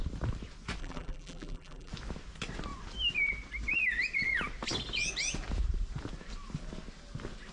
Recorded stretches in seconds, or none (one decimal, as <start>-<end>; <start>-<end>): 0.0-0.8; 1.9-7.5